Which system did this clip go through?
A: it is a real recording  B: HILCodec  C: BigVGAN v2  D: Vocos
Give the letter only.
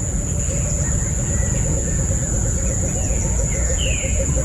D